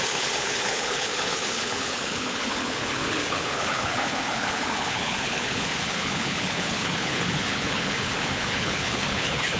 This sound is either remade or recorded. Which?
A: remade